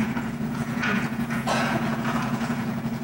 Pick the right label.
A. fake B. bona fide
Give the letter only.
A